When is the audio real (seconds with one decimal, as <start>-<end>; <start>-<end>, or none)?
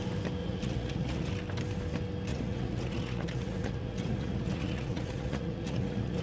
0.0-0.4; 1.3-2.3